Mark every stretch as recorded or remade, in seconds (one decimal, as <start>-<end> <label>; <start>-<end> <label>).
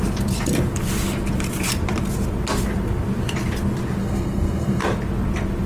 0.0-4.0 recorded; 4.0-4.8 remade; 4.8-5.7 recorded